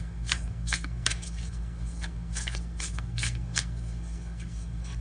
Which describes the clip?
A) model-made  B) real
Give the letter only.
A